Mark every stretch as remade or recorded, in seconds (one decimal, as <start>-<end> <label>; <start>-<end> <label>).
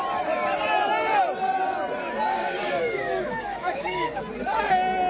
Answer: 0.0-2.3 recorded; 2.3-4.2 remade; 4.2-5.1 recorded